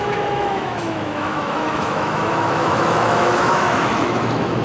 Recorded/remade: remade